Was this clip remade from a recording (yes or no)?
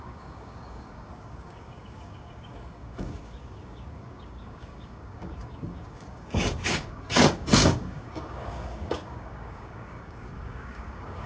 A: yes